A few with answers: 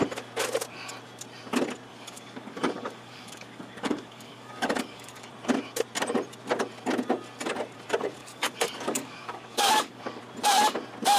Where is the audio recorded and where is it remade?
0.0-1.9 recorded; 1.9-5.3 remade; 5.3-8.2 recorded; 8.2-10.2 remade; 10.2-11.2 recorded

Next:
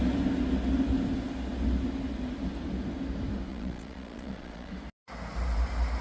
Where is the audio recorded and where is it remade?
0.0-3.5 recorded; 3.5-4.7 remade; 4.7-6.0 recorded

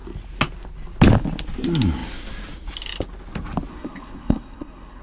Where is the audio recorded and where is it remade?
0.0-3.7 recorded; 3.7-5.0 remade

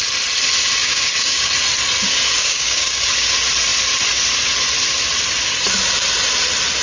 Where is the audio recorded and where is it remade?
0.0-0.8 recorded; 0.8-1.5 remade; 1.5-2.4 recorded; 2.4-3.0 remade; 3.0-6.8 recorded